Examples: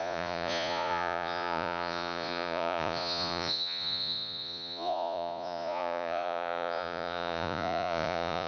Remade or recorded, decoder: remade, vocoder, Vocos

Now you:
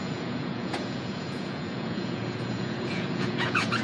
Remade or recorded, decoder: remade, vocoder, Vocos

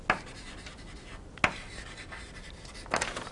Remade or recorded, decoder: recorded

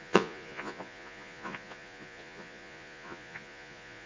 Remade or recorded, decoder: remade, vocoder, Vocos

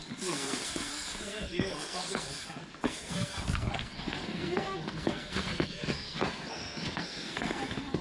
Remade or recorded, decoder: remade, codec, SNAC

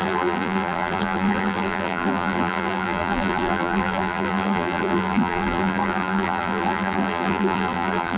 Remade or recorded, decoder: remade, vocoder, BigVGAN v2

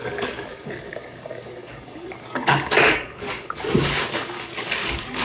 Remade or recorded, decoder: remade, codec, DAC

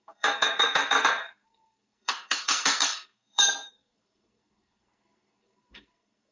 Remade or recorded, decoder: remade, codec, SNAC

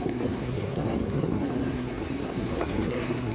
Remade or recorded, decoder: remade, codec, SNAC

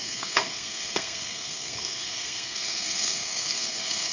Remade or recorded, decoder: remade, codec, SNAC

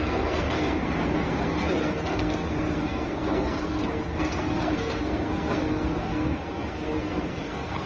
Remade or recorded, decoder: remade, codec, SNAC